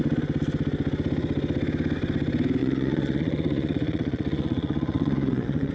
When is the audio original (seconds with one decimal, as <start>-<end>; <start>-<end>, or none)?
0.0-2.6